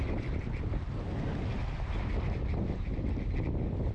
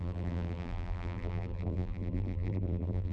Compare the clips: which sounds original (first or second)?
first